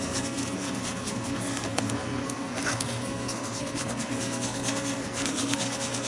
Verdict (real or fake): fake